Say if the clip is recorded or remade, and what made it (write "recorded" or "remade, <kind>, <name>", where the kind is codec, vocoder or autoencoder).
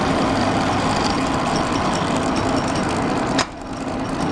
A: recorded